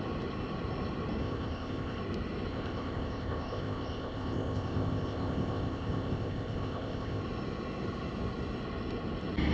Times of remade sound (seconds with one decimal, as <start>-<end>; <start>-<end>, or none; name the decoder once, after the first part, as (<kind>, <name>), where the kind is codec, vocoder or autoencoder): 1.2-2.0 (codec, ZipCodec); 2.5-7.2